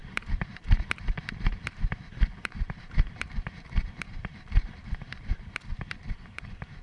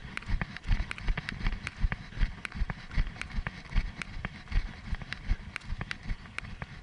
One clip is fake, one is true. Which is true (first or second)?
second